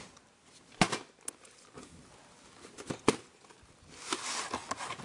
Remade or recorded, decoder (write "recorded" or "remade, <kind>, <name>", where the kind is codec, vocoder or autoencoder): recorded